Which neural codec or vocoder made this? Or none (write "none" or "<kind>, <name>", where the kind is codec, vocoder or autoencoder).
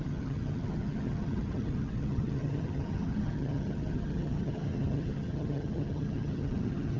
vocoder, HiFi-GAN